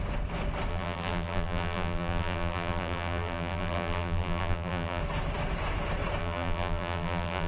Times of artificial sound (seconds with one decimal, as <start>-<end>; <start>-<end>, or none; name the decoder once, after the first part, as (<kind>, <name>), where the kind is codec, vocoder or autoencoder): 0.7-5.0 (vocoder, BigVGAN v2); 6.2-7.5